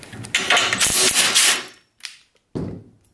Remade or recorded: recorded